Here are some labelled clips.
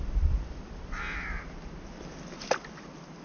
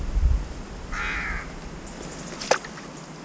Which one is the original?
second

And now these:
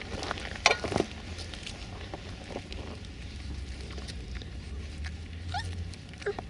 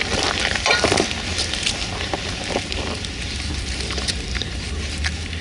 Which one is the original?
first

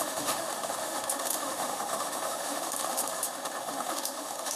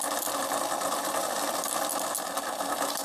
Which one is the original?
second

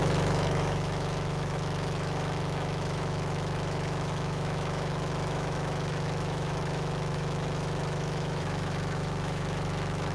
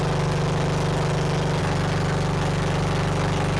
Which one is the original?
second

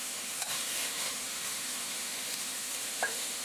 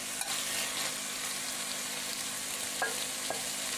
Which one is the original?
second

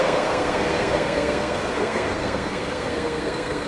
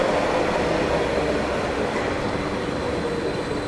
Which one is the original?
second